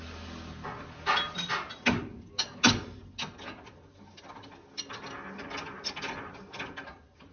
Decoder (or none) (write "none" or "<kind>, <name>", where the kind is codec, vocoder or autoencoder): none